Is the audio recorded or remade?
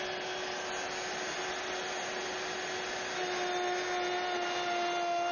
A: recorded